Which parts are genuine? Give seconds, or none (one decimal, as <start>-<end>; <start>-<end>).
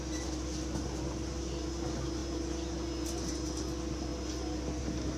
0.0-5.2